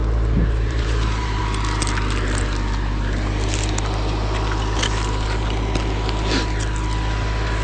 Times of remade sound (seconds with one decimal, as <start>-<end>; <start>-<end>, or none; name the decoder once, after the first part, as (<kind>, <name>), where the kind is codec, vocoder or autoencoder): 0.0-1.4 (vocoder, BigVGAN v2)